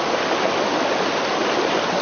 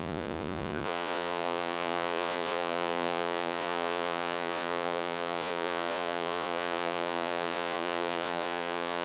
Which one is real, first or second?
first